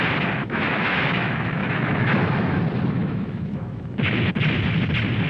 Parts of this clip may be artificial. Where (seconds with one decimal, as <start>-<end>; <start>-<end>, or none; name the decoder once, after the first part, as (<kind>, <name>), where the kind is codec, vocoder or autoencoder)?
0.4-2.6 (autoencoder, DAC-VAE); 3.0-4.3